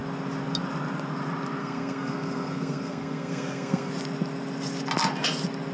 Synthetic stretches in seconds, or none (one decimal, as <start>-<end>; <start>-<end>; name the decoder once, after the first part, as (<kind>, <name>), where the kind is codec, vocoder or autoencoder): 1.6-3.9 (codec, SNAC)